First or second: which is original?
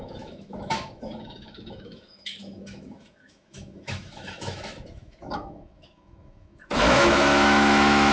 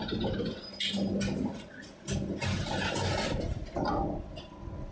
second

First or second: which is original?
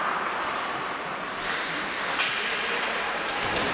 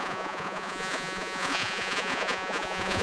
first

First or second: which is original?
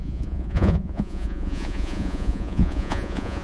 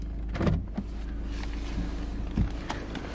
second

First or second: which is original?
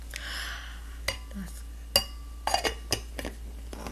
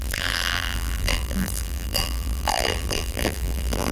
first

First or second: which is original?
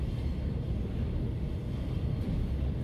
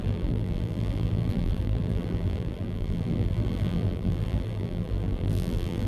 first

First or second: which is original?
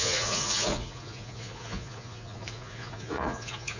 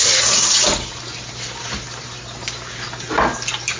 second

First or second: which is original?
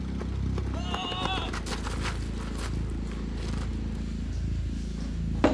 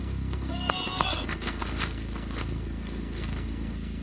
first